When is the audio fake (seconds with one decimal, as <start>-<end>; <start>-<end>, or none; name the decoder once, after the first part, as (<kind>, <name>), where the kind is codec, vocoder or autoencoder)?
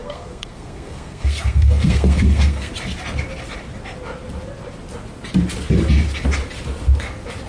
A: 0.0-2.7 (codec, SNAC)